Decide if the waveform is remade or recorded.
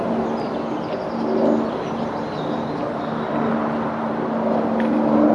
recorded